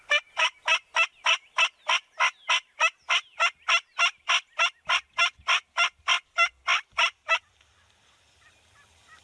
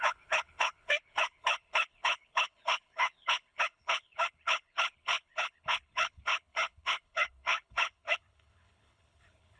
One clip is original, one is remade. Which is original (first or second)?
first